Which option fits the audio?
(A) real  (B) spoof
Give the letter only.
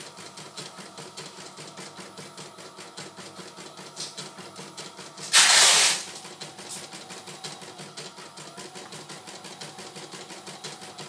A